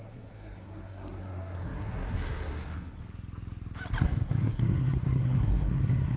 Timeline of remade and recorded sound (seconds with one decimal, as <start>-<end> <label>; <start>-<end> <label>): 0.0-3.0 remade; 3.0-4.0 recorded; 4.0-6.2 remade